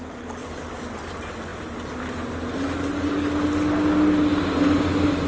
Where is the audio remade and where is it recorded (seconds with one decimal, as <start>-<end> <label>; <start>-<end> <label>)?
0.0-0.4 recorded; 0.4-1.1 remade; 1.1-5.3 recorded